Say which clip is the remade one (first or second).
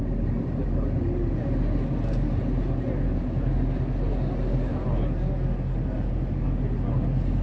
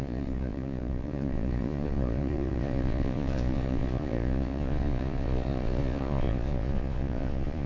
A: second